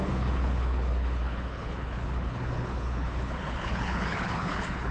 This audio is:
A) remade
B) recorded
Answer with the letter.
A